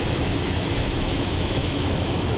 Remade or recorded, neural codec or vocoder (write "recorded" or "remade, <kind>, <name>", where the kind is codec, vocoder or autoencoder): remade, autoencoder, DAC-VAE